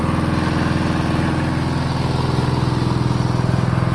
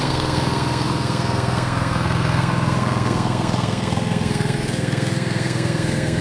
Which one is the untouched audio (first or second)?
first